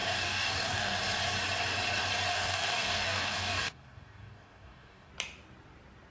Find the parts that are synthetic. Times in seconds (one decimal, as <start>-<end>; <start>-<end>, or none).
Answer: 0.0-1.0; 2.3-5.1